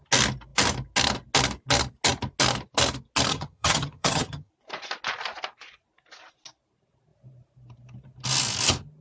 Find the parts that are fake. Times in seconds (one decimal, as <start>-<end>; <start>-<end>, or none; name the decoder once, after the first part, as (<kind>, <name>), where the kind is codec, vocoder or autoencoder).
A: 3.3-4.5 (vocoder, HiFi-GAN)